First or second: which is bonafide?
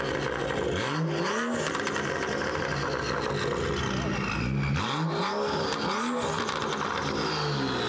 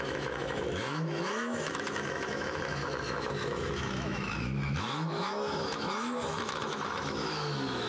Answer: first